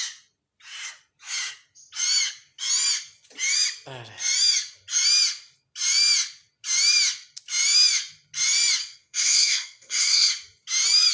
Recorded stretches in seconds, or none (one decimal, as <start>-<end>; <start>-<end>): 0.0-8.8; 10.3-11.1